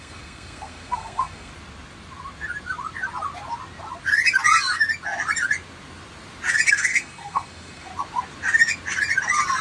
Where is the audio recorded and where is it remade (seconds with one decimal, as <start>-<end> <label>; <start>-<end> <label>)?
0.0-1.5 remade; 1.5-6.7 recorded; 6.7-7.9 remade; 7.9-9.6 recorded